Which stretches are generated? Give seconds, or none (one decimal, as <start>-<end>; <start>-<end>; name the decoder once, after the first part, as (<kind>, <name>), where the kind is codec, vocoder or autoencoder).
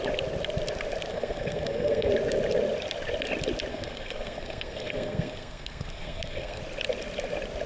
1.1-2.1 (codec, SNAC); 3.7-6.6